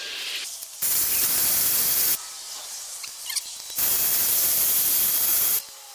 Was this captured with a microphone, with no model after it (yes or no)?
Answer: yes